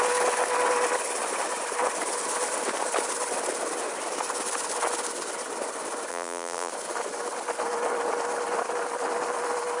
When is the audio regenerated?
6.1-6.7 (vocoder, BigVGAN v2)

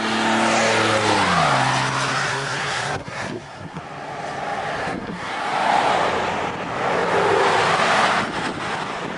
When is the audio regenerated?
2.1-3.8 (codec, SNAC); 4.8-5.4

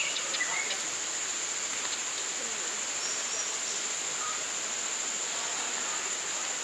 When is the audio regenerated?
none

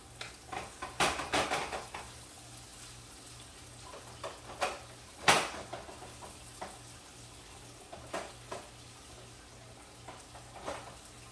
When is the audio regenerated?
none

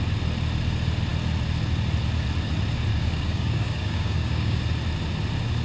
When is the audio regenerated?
2.9-4.6 (codec, DAC)

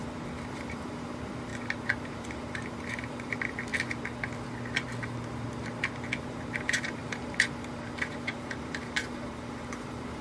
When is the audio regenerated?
0.0-1.5 (vocoder, BigVGAN v2); 2.0-3.7; 6.2-10.2